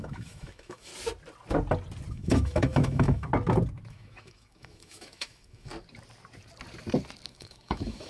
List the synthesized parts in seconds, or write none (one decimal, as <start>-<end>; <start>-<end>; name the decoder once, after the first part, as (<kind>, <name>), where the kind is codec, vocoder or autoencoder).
0.0-0.9 (autoencoder, DAC-VAE); 2.1-3.3; 3.9-5.7; 7.3-8.1